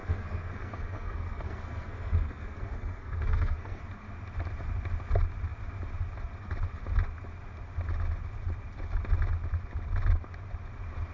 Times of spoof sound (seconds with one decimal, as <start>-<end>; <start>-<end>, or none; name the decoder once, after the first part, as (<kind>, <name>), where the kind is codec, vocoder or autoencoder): 0.0-3.8 (codec, SNAC)